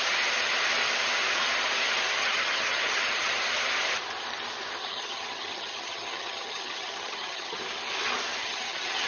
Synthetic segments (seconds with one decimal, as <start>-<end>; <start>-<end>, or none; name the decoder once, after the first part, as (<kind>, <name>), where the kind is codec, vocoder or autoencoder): 2.2-3.3 (vocoder, HiFi-GAN); 4.8-7.6; 8.4-9.1